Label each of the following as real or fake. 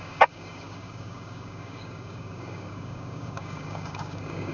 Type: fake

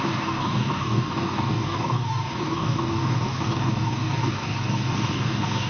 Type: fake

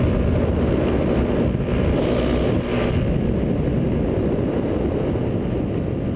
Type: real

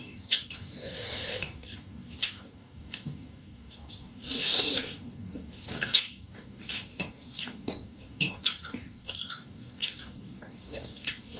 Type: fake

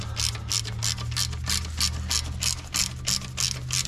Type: real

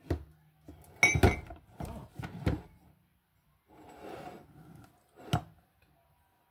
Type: real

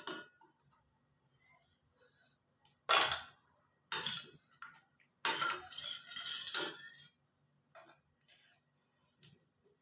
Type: real